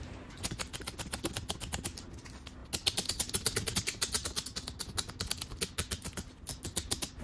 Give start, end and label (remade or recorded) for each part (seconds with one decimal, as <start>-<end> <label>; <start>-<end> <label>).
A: 0.0-7.2 recorded